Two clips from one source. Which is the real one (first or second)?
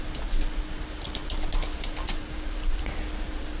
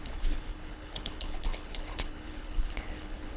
first